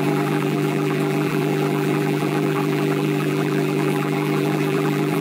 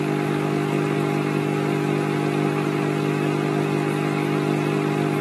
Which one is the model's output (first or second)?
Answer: first